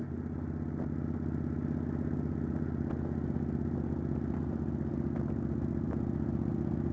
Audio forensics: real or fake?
real